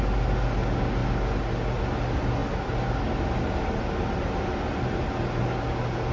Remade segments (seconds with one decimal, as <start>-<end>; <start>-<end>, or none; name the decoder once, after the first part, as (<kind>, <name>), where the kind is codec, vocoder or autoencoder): none